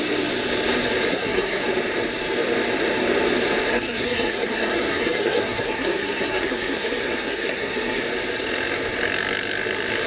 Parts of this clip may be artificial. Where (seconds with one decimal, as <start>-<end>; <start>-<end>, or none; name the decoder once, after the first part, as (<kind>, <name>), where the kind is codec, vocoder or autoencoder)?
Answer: 1.1-1.6 (codec, SNAC); 3.7-8.0